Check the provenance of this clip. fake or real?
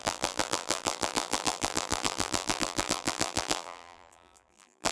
fake